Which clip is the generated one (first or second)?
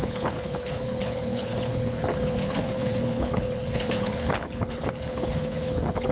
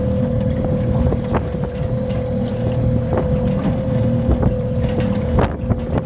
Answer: first